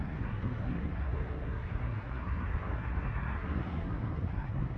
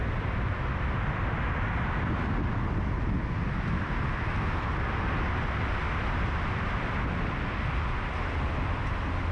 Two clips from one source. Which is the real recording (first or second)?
second